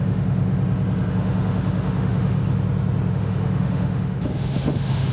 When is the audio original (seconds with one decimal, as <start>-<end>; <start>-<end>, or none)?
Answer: 0.5-1.1; 2.4-3.1